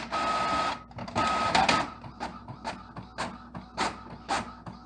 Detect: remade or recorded recorded